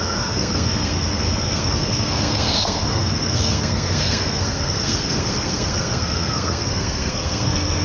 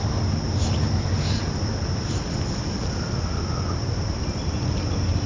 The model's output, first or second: first